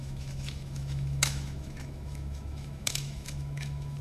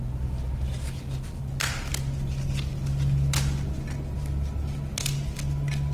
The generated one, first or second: first